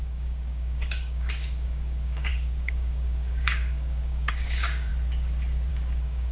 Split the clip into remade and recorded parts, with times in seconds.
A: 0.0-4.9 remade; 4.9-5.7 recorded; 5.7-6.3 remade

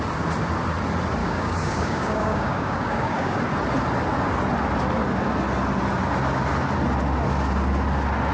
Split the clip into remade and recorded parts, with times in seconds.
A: 0.0-1.2 recorded; 1.2-3.4 remade; 3.4-8.3 recorded

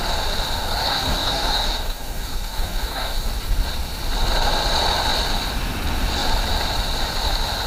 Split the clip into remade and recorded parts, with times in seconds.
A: 0.0-0.6 recorded; 0.6-3.3 remade; 3.3-7.7 recorded